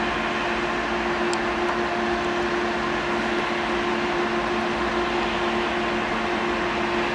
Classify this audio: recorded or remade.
recorded